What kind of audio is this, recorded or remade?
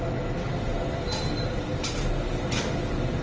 recorded